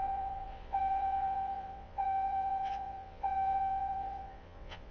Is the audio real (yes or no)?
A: no